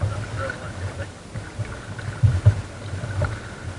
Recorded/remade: recorded